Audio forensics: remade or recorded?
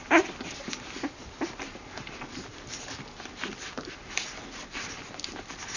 recorded